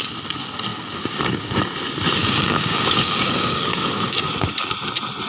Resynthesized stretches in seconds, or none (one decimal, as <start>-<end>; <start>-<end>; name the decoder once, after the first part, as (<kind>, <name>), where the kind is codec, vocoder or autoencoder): 0.7-1.6 (codec, DAC); 2.2-4.3